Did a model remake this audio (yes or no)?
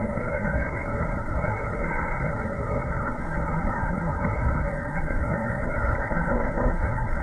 yes